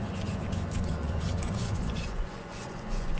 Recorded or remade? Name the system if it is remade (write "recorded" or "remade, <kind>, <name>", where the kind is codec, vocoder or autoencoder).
remade, vocoder, Vocos